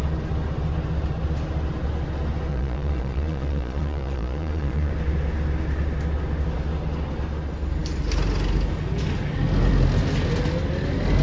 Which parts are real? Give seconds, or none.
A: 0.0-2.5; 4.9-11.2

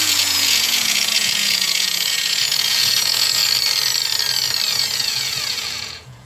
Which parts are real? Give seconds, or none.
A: 3.4-4.7

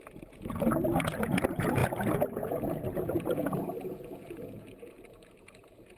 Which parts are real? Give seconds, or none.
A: none

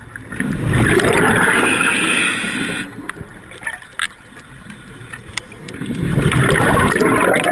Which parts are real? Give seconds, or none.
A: 0.0-7.5

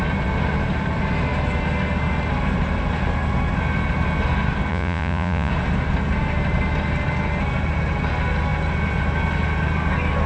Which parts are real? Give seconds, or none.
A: 0.0-4.7; 5.5-10.3

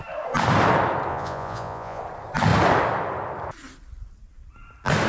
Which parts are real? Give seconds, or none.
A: 0.0-1.1; 2.0-5.1

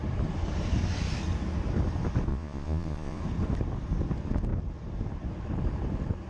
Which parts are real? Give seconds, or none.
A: 0.0-2.3; 3.2-6.3